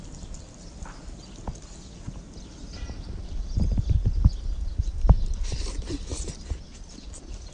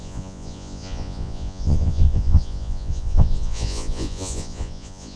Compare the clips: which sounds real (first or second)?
first